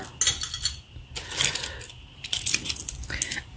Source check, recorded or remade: recorded